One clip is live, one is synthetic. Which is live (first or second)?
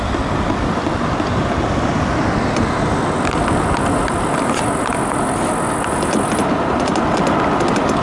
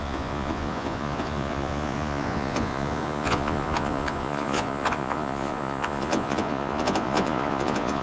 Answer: first